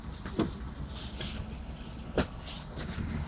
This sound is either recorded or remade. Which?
recorded